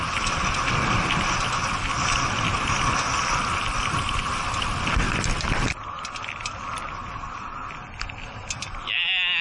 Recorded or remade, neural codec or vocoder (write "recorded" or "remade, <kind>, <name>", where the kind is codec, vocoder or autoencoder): recorded